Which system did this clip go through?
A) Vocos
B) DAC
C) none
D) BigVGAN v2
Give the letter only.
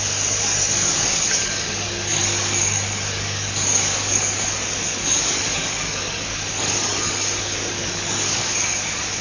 B